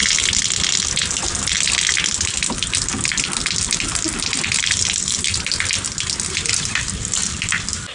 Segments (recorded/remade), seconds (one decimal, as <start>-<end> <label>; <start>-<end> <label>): 0.0-7.9 recorded